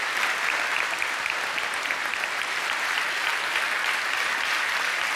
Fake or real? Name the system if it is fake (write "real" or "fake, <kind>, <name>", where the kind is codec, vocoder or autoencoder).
real